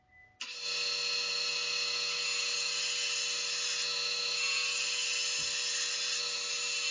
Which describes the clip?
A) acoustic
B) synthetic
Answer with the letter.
A